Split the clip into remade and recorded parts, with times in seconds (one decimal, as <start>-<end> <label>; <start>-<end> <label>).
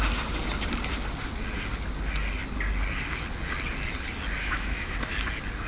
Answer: 0.0-4.4 recorded; 4.4-5.1 remade; 5.1-5.7 recorded